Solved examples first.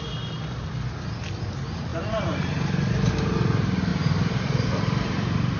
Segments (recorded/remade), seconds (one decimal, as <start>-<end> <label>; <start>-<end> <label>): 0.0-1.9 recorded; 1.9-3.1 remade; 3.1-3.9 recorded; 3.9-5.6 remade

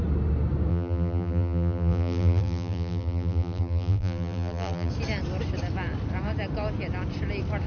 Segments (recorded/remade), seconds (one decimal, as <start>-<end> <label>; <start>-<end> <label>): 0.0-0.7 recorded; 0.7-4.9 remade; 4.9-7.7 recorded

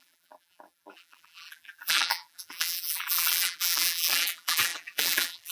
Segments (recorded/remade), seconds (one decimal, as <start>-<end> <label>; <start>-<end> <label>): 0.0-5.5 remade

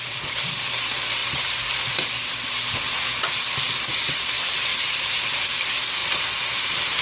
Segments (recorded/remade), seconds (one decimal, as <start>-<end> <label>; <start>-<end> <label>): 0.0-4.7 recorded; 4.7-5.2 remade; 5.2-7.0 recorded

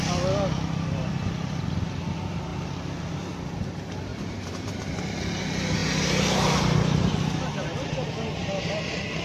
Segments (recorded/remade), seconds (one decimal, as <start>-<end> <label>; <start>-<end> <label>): 0.0-4.1 recorded; 4.1-4.9 remade; 4.9-5.8 recorded; 5.8-6.6 remade; 6.6-9.2 recorded